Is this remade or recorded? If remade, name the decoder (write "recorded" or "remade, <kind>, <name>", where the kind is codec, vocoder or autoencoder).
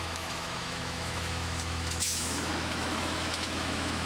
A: remade, autoencoder, DAC-VAE